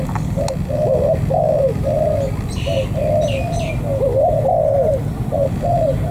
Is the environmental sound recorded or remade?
recorded